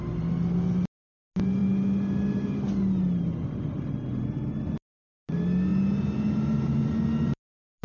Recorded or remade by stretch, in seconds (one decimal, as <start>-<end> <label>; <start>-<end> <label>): 0.0-7.8 recorded